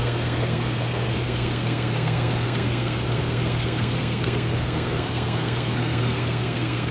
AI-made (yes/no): yes